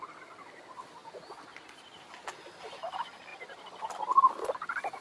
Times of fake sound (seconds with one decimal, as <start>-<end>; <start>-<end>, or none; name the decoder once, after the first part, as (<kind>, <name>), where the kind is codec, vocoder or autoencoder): none